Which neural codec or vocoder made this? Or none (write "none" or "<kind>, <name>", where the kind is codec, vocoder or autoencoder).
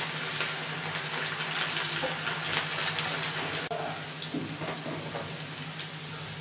none